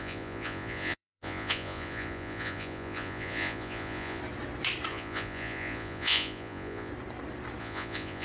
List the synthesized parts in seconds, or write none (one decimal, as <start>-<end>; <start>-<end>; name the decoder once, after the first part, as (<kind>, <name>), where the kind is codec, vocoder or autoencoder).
0.0-4.2 (vocoder, Vocos); 4.9-6.9; 7.6-8.2